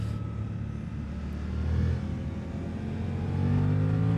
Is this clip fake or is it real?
real